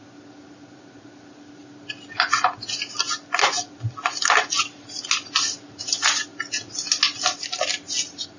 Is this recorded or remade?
recorded